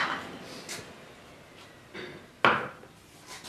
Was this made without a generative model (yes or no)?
yes